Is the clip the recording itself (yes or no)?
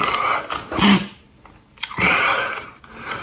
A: yes